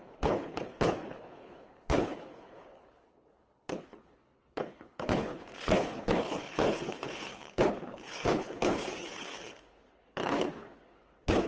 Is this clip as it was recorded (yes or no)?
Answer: no